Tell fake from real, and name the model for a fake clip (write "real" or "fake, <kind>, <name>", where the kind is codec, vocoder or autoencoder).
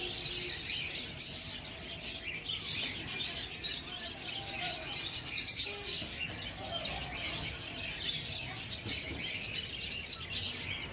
real